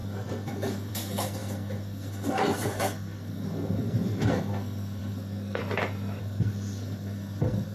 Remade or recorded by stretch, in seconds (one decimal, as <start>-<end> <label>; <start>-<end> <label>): 0.0-5.6 remade; 5.6-6.2 recorded; 6.2-7.7 remade